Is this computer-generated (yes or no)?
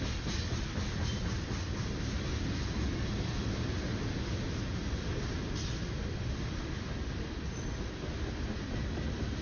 no